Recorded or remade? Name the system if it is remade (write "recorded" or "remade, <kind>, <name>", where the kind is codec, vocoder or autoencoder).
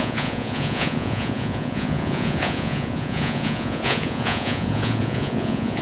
remade, vocoder, Vocos